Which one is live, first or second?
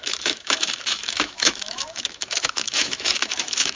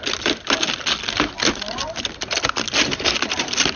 second